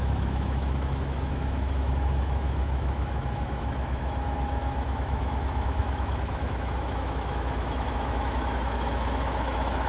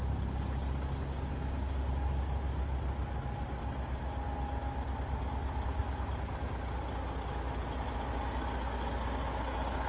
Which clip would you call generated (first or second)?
first